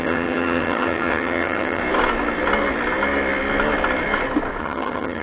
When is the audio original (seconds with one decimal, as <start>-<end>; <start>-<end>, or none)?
1.8-4.6